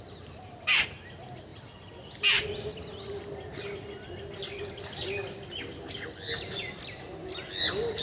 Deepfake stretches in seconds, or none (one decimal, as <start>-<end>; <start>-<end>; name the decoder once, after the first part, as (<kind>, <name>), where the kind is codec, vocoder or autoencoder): none